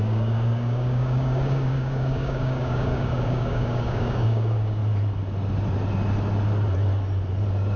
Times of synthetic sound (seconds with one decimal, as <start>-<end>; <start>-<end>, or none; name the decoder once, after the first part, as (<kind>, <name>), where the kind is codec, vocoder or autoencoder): 0.0-4.8 (codec, DAC)